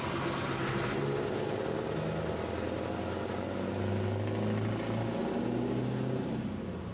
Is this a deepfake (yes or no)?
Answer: no